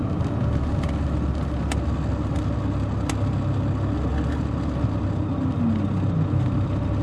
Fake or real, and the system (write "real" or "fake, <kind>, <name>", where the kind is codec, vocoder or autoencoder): real